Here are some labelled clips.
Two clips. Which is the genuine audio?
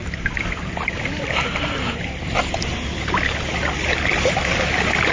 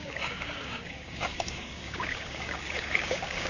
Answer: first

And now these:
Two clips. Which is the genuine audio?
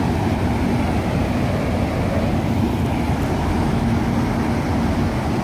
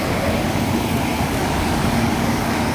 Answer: first